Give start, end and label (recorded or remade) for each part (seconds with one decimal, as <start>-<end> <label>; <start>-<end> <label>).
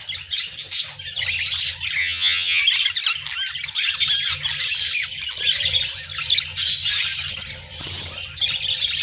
0.0-2.0 recorded; 2.0-2.6 remade; 2.6-9.0 recorded